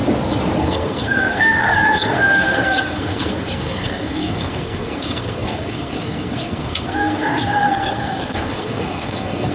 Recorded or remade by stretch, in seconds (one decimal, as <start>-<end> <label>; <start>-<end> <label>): 0.0-0.6 recorded; 0.6-9.5 remade